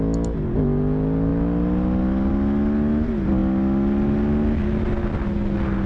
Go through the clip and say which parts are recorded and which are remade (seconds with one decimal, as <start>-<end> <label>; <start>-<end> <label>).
0.0-5.9 recorded